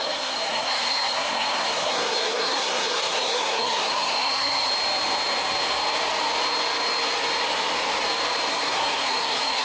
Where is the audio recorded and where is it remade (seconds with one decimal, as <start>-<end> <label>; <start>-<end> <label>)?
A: 0.0-4.7 remade; 4.7-8.5 recorded; 8.5-9.6 remade